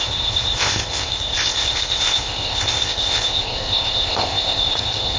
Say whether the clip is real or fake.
fake